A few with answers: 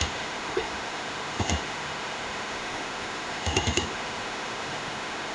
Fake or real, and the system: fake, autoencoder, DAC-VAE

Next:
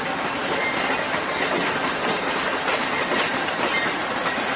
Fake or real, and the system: real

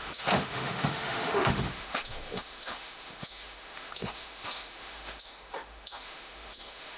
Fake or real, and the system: fake, autoencoder, DAC-VAE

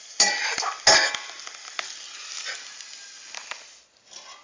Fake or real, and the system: real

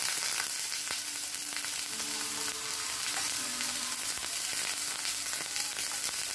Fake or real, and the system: real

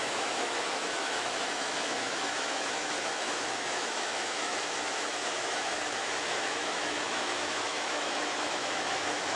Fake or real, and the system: fake, autoencoder, DAC-VAE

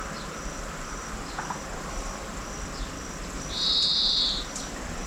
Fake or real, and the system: real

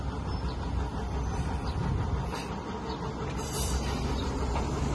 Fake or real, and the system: real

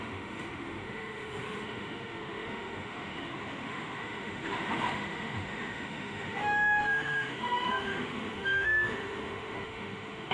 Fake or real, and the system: fake, autoencoder, DAC-VAE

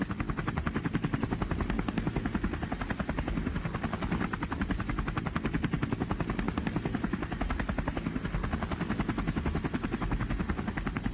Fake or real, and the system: real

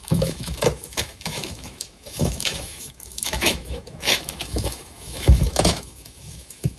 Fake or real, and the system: fake, autoencoder, DAC-VAE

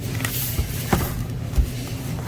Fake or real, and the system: real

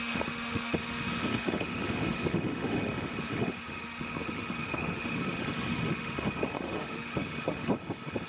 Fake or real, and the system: fake, autoencoder, DAC-VAE